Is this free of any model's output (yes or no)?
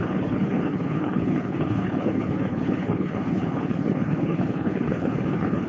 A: no